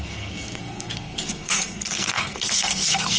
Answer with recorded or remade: remade